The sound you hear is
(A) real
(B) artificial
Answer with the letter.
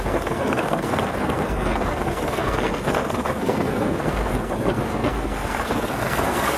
B